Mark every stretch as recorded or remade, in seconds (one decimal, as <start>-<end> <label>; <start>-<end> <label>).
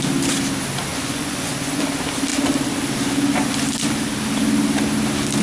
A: 0.0-0.9 recorded; 0.9-1.8 remade; 1.8-5.4 recorded